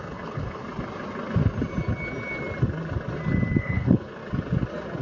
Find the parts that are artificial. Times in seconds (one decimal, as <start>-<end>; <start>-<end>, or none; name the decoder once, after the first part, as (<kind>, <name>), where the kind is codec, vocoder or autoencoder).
0.0-0.6 (codec, HILCodec); 3.6-4.2